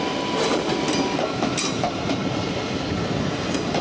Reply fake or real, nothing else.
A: real